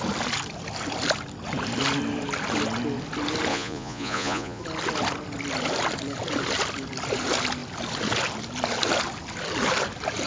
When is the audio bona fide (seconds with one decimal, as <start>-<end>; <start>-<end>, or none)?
0.0-3.5; 4.6-10.3